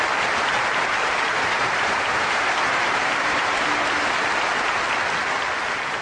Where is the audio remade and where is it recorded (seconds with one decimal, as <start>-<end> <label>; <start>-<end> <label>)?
0.0-1.0 recorded; 1.0-3.7 remade; 3.7-6.0 recorded